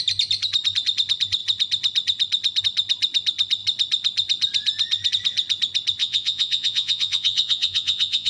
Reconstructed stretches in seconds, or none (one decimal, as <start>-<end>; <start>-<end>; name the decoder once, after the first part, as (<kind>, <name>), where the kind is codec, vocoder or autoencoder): 6.0-8.3 (vocoder, Vocos)